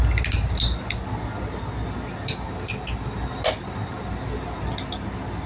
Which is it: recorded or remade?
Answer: recorded